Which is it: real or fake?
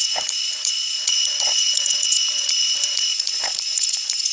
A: fake